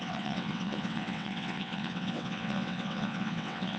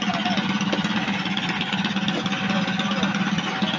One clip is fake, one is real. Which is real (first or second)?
second